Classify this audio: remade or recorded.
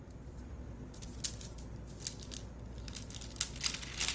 recorded